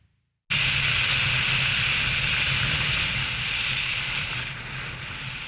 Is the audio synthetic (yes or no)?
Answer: no